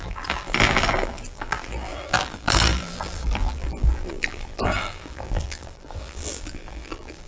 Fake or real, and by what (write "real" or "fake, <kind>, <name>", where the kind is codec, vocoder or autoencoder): fake, vocoder, BigVGAN v2